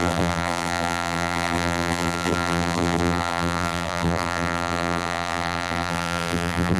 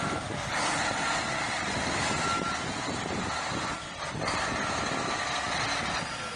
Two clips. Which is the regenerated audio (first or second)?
first